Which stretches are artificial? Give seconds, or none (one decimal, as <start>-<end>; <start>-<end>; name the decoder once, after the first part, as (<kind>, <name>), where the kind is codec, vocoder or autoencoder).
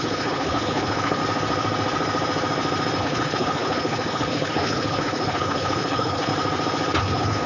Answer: 0.0-1.2 (codec, HILCodec); 3.0-6.3; 7.0-7.5